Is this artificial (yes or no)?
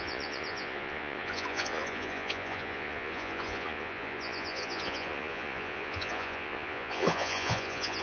yes